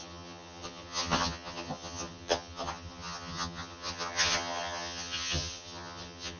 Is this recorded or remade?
remade